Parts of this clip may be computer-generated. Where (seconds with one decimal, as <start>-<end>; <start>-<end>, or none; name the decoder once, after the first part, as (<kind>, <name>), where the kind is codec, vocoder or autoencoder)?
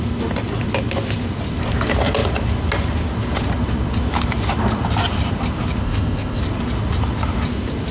5.8-6.4 (codec, ZipCodec)